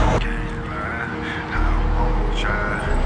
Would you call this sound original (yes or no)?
yes